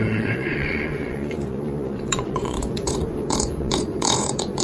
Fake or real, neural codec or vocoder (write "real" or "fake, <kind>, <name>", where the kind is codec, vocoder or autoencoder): fake, vocoder, Vocos